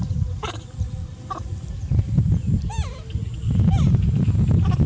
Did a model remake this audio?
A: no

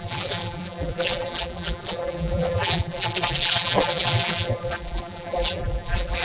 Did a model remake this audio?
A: yes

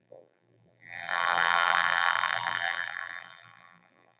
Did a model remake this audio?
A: yes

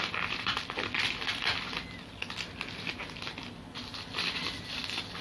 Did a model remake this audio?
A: yes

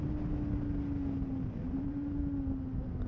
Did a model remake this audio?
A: no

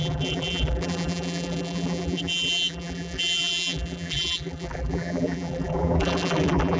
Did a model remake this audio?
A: yes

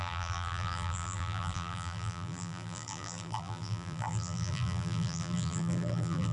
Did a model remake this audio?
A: yes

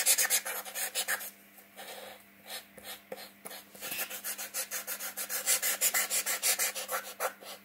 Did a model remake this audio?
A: no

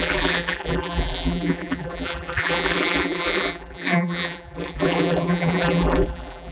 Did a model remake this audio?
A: yes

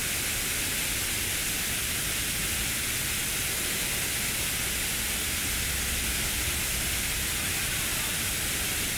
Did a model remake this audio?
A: no